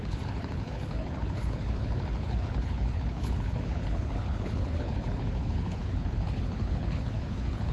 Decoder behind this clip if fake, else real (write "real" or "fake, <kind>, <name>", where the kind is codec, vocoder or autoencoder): fake, codec, HILCodec